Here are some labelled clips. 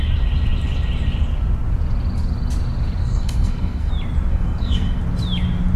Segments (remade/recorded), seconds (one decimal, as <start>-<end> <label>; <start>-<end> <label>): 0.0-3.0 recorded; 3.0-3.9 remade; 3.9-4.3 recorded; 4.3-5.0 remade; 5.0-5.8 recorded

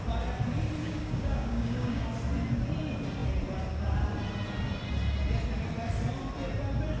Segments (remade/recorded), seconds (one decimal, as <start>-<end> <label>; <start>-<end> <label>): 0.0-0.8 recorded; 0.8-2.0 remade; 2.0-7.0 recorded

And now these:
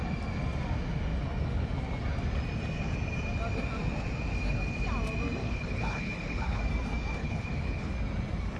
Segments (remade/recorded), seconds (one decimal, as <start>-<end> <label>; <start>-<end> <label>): 0.0-5.4 recorded; 5.4-6.6 remade; 6.6-7.2 recorded; 7.2-7.9 remade; 7.9-8.6 recorded